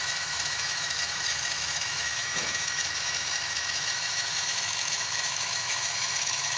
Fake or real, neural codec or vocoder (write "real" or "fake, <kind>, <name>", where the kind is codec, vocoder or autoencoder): fake, autoencoder, DAC-VAE